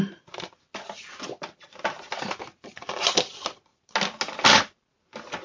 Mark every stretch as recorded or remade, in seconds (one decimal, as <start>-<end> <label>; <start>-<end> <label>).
0.0-5.4 recorded